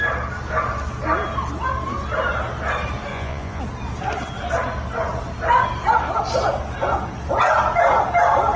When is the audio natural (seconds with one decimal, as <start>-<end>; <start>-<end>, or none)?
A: 0.0-3.1; 3.6-8.6